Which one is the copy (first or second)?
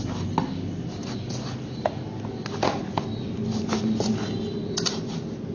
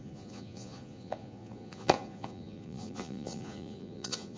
second